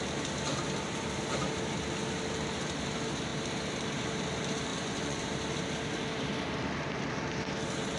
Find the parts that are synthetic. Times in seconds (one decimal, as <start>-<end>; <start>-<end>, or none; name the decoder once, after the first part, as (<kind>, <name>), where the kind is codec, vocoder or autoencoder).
4.7-5.2 (vocoder, Vocos)